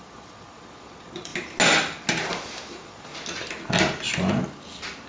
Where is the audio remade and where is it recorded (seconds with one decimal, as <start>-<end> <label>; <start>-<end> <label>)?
0.0-1.3 remade; 1.3-2.7 recorded; 2.7-3.1 remade; 3.1-5.1 recorded

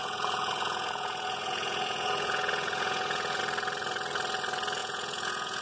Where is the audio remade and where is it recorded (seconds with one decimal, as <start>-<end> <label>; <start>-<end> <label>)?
0.0-3.4 remade; 3.4-4.8 recorded; 4.8-5.6 remade